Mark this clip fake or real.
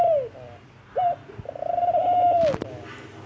real